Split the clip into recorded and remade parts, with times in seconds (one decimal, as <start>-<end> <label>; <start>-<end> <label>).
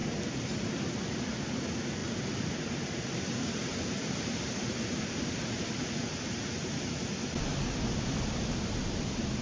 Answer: 0.0-9.4 recorded